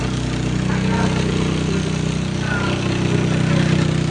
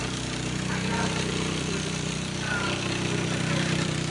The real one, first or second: first